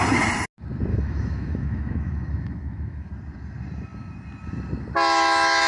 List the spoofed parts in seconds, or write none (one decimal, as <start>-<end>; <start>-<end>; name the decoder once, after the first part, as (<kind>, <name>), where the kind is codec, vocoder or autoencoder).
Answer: 0.9-3.1 (autoencoder, DAC-VAE)